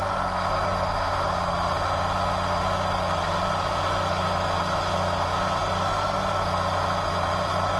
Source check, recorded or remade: recorded